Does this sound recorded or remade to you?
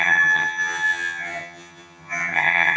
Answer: remade